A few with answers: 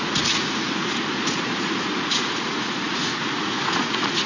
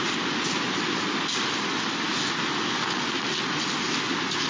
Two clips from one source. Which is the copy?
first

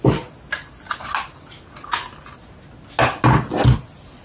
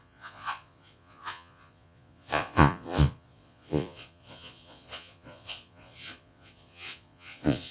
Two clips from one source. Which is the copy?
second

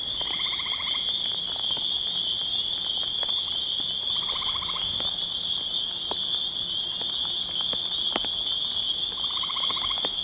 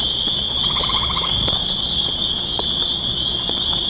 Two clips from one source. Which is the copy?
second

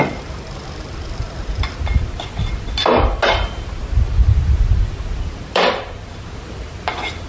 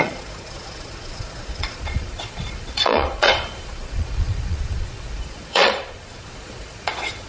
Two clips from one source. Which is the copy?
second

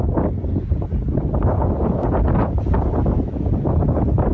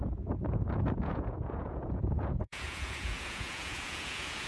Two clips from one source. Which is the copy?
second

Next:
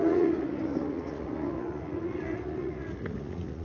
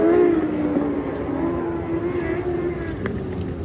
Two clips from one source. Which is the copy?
first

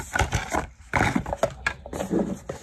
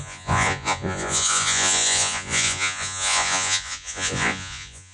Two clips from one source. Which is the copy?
second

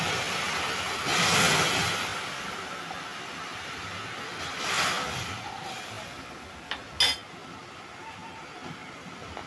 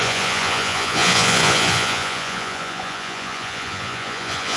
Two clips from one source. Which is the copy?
second